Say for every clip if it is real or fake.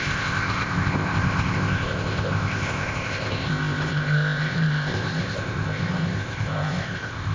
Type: fake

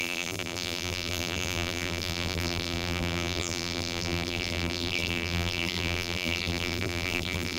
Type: fake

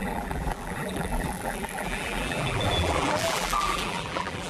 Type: fake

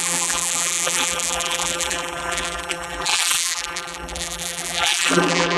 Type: fake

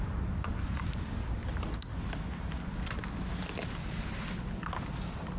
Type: real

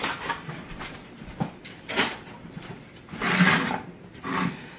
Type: real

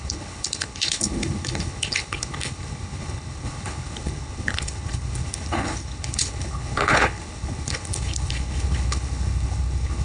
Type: fake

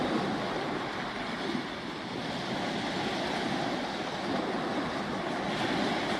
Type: real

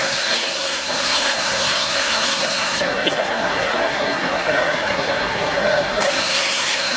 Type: fake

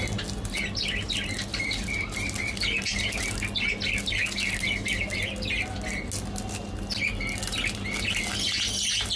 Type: real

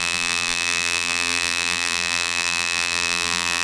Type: fake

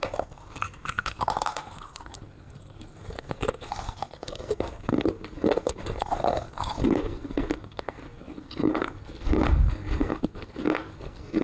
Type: fake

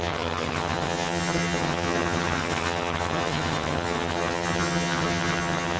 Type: fake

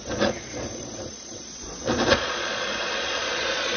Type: fake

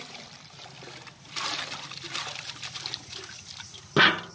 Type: fake